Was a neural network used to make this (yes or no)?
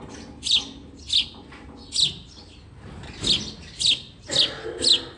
no